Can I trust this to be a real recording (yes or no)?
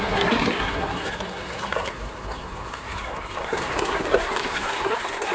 no